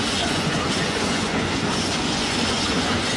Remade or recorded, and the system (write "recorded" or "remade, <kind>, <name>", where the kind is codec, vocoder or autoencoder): remade, vocoder, Vocos